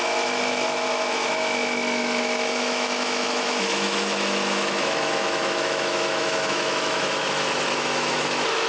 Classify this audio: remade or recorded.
remade